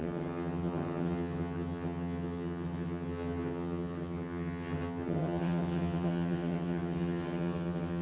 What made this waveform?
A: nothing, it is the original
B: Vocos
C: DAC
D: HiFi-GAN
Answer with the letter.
D